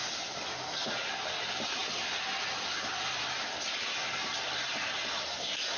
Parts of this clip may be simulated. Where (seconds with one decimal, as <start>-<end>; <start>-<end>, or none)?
none